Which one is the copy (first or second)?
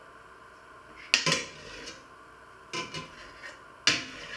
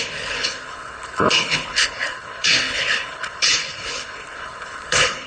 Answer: second